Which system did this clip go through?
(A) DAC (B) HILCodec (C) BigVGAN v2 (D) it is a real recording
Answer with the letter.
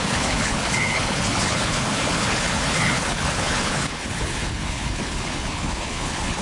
B